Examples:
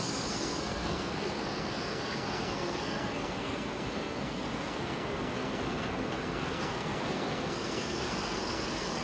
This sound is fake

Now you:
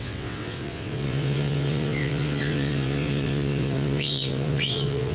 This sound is fake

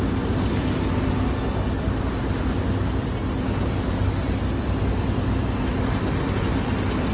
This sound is real